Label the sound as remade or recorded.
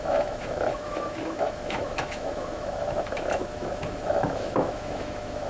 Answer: remade